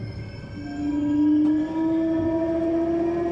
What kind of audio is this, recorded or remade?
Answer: recorded